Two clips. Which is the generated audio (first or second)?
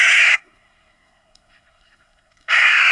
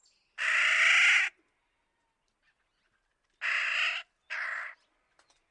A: first